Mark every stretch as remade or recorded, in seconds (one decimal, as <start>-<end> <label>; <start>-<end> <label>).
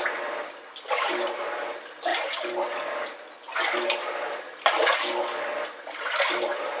0.0-6.8 recorded